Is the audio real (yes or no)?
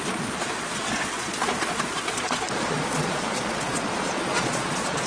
no